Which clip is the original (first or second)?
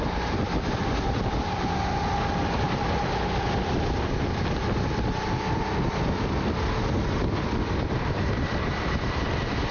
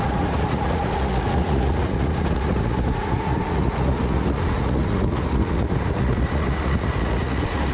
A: first